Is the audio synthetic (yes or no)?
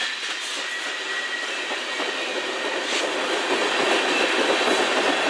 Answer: no